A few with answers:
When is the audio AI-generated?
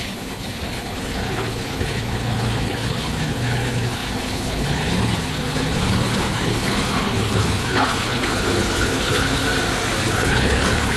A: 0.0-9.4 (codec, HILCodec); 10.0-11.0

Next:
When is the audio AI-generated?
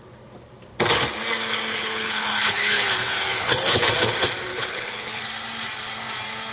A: 1.7-3.9 (codec, HILCodec); 4.5-5.2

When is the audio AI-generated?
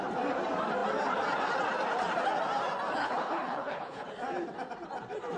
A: 3.0-4.1 (codec, HILCodec)